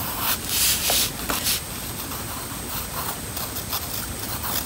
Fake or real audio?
real